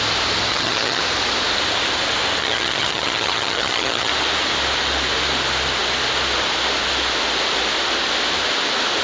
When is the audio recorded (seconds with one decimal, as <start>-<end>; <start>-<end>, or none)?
0.0-0.5; 1.0-2.4; 4.1-9.0